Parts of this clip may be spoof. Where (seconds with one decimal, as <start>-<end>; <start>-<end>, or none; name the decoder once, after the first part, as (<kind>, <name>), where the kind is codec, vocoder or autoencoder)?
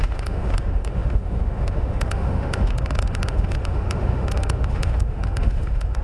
0.0-6.0 (autoencoder, DAC-VAE)